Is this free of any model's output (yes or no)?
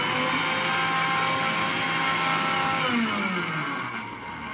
yes